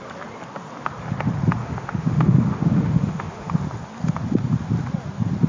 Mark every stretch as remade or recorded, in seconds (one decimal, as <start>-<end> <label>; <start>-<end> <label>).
0.0-1.6 recorded; 1.6-3.5 remade; 3.5-5.5 recorded